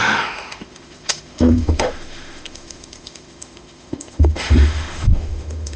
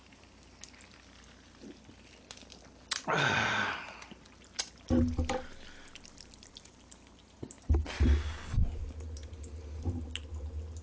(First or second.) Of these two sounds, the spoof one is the first